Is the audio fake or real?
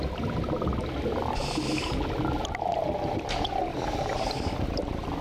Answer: real